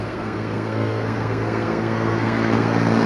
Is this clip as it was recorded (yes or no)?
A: no